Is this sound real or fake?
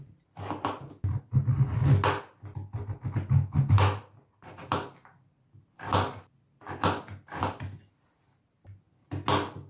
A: real